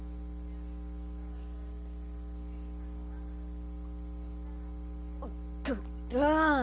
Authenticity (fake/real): real